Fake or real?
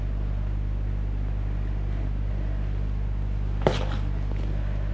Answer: real